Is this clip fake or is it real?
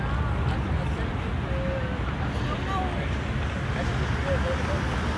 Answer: real